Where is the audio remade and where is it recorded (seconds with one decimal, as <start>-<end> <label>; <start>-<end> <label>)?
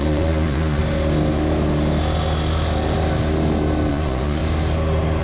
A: 0.0-0.8 remade; 0.8-3.9 recorded; 3.9-4.4 remade; 4.4-5.2 recorded